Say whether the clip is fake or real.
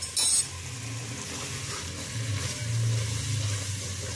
real